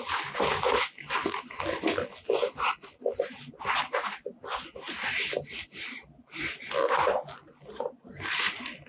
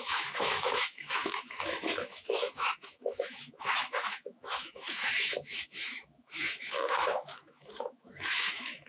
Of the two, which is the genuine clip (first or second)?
first